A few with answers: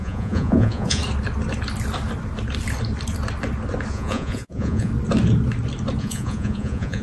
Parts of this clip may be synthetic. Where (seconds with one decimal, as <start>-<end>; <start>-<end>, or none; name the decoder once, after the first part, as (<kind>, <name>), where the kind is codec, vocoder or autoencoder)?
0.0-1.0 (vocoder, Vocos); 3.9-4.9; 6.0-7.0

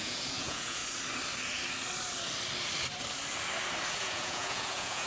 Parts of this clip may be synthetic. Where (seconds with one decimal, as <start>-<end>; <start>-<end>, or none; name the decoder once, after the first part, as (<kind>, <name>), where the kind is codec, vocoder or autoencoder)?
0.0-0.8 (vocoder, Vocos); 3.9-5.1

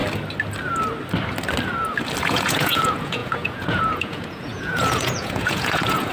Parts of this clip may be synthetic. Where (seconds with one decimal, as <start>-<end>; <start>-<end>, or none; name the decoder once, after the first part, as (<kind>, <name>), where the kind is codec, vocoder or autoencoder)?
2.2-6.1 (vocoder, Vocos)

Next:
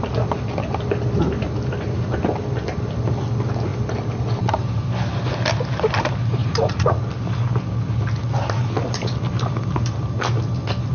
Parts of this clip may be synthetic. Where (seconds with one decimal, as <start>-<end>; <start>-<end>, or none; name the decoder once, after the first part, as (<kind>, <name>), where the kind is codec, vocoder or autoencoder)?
6.4-7.0 (vocoder, Vocos)

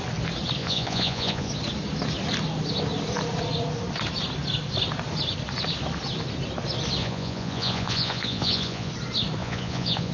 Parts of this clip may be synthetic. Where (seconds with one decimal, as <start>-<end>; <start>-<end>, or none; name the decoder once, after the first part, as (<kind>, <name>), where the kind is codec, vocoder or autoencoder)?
0.6-1.5 (vocoder, Vocos); 7.0-8.9; 9.4-10.1